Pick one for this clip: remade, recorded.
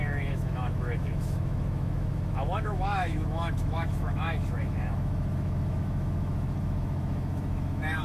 remade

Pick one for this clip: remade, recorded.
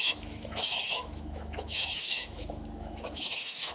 remade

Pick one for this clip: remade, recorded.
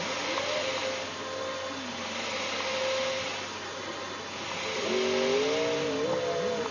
recorded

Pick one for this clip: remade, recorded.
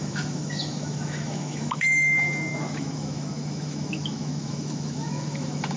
remade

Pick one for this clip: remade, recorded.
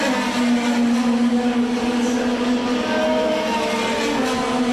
recorded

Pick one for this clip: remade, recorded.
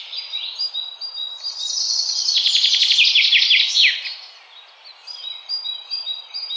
recorded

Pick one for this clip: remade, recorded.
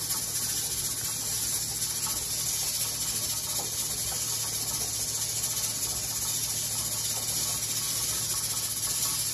recorded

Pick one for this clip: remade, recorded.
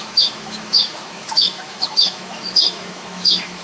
remade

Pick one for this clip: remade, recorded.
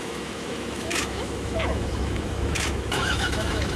remade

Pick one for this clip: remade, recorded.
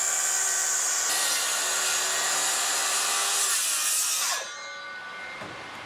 recorded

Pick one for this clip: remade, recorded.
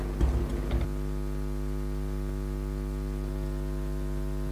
recorded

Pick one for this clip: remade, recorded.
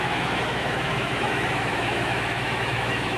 remade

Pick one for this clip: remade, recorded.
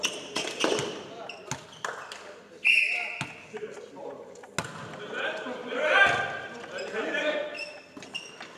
recorded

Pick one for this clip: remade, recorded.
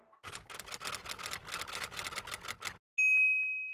recorded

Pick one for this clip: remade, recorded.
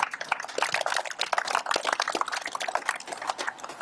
recorded